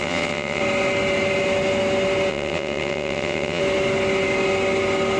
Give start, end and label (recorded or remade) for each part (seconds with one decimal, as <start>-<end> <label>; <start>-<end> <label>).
0.0-0.6 remade; 0.6-2.3 recorded; 2.3-3.6 remade; 3.6-5.2 recorded